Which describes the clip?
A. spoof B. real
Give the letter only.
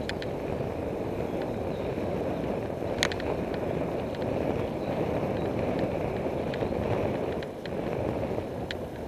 B